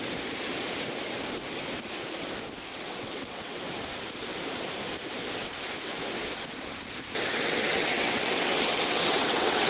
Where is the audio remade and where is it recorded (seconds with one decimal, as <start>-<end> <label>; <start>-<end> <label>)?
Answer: 0.0-2.7 recorded; 2.7-3.6 remade; 3.6-7.3 recorded; 7.3-9.7 remade